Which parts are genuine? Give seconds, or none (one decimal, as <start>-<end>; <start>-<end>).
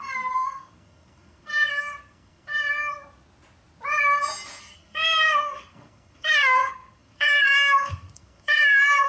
2.5-4.6